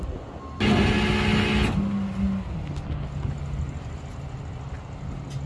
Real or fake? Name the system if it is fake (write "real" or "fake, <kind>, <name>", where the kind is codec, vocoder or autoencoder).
real